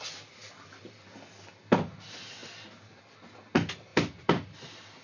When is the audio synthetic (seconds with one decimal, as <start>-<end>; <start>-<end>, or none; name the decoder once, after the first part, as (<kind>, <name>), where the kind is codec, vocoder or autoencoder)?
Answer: 3.9-4.6 (vocoder, BigVGAN v2)